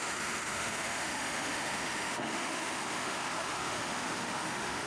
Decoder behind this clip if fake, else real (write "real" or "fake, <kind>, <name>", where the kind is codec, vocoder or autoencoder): fake, autoencoder, DAC-VAE